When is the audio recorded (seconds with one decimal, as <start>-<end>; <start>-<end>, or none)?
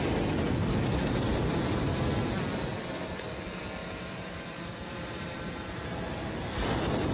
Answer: 0.0-3.8; 5.8-7.1